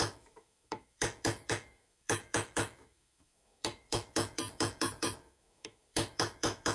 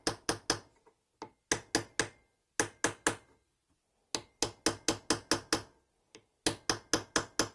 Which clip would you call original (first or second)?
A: second